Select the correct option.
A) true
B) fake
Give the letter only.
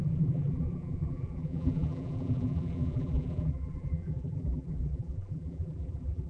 B